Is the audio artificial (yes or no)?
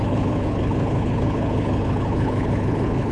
yes